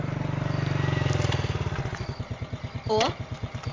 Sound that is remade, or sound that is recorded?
recorded